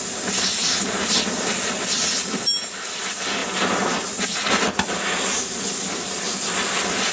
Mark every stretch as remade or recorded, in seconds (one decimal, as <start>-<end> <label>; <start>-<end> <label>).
0.0-7.1 recorded